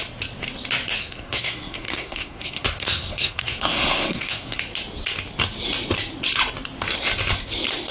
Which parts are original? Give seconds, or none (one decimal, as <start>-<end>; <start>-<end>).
0.0-1.0; 4.6-7.9